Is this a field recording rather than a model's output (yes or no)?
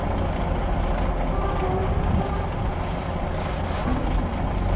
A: yes